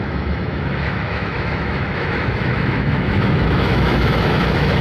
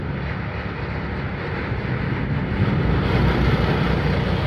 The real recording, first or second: second